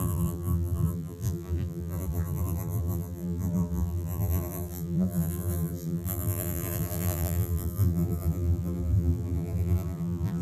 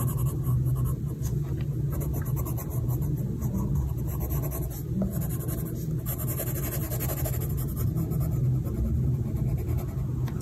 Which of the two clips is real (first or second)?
second